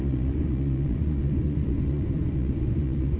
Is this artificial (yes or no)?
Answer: yes